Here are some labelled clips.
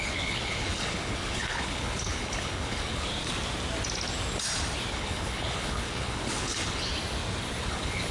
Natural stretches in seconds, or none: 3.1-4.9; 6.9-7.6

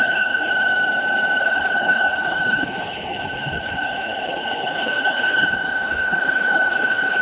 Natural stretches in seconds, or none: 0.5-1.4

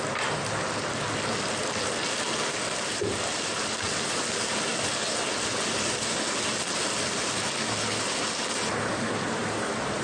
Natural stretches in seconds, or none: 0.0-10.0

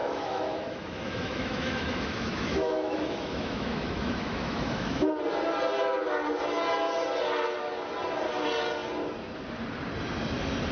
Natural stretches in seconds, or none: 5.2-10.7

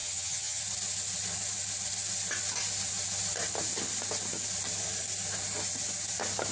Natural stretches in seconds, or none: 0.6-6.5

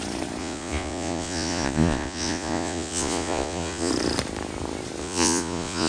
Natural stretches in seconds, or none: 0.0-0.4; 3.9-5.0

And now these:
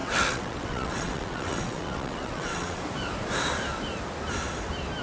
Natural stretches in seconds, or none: 2.8-5.0